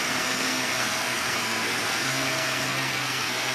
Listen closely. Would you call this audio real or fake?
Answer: fake